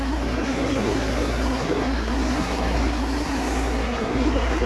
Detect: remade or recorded remade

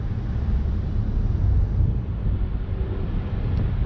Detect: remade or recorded recorded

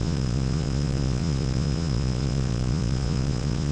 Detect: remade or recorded remade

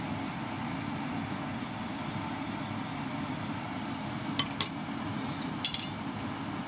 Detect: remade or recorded recorded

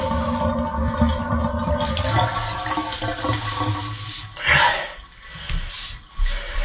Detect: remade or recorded recorded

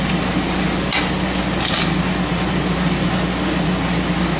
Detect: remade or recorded recorded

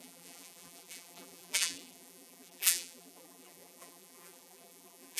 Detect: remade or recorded remade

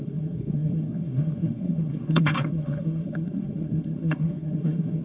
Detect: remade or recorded remade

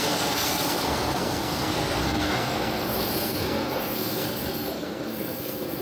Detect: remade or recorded remade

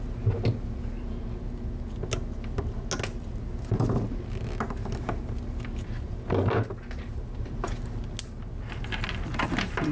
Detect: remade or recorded recorded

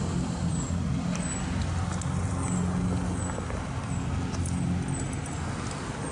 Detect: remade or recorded recorded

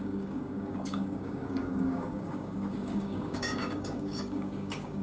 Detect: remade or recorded remade